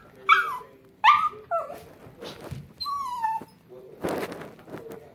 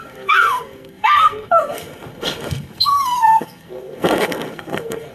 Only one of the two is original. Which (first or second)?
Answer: first